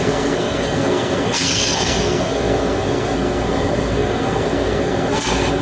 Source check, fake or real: fake